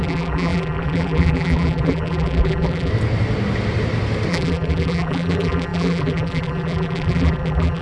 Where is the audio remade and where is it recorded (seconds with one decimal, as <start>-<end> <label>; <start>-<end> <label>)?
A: 0.0-2.9 remade; 2.9-4.3 recorded; 4.3-7.8 remade

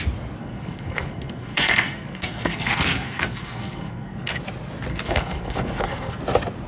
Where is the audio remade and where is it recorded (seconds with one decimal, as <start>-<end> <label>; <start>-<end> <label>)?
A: 0.0-0.4 recorded; 0.4-4.4 remade; 4.4-4.9 recorded; 4.9-6.2 remade; 6.2-6.7 recorded

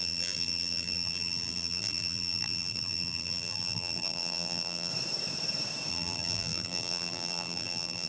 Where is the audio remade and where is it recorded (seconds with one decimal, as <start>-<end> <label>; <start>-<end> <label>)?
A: 0.0-4.9 remade; 4.9-5.9 recorded; 5.9-8.1 remade

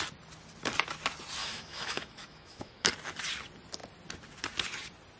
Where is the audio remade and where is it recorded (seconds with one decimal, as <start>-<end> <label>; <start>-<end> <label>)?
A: 0.0-1.4 recorded; 1.4-2.9 remade; 2.9-5.2 recorded